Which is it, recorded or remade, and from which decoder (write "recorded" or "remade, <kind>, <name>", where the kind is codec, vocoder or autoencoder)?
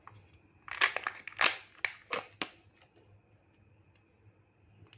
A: recorded